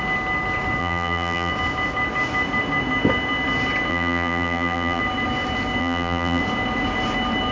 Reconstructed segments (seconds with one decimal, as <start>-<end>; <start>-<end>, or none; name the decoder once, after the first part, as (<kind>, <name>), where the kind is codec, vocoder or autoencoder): 0.8-1.5 (vocoder, BigVGAN v2); 3.9-5.0; 5.8-6.4